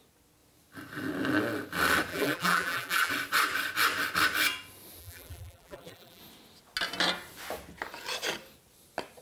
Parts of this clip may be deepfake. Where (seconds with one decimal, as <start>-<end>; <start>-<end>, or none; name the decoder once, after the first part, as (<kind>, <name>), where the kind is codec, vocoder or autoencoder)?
2.1-3.1 (vocoder, BigVGAN v2); 5.0-6.2